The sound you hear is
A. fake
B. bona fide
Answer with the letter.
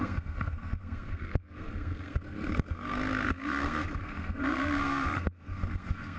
A